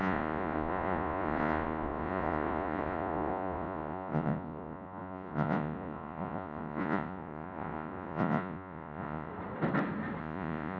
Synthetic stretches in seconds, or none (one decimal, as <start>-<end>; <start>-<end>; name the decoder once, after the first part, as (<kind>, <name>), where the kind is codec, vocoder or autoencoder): 0.0-9.3 (vocoder, Vocos); 10.2-10.8